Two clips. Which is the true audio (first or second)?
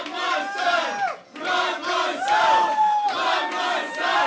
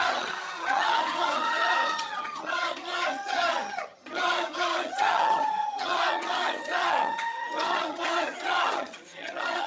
first